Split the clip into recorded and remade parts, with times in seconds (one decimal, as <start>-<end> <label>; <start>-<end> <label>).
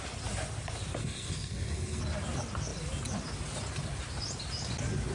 0.0-1.0 recorded; 1.0-2.0 remade; 2.0-5.1 recorded